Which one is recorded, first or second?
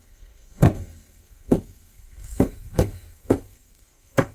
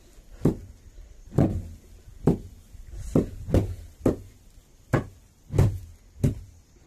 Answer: second